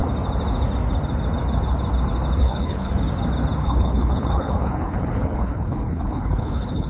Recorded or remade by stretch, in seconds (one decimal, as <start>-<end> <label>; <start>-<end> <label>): 0.0-2.4 recorded; 2.4-2.9 remade; 2.9-3.6 recorded; 3.6-6.9 remade